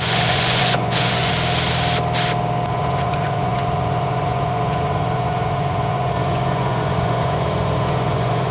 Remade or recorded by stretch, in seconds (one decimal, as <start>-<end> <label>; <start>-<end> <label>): 0.0-1.3 remade; 1.3-2.7 recorded; 2.7-8.5 remade